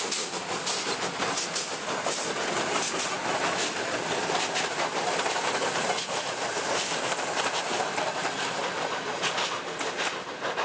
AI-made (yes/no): no